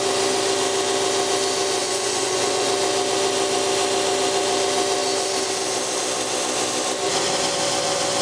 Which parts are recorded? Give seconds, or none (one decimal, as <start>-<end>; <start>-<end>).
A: 0.0-1.8; 2.7-8.2